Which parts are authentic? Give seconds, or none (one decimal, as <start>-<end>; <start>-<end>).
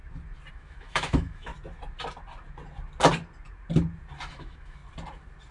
0.0-0.5; 1.5-4.3; 4.8-5.5